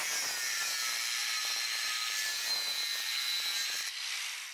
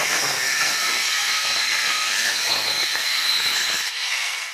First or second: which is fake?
second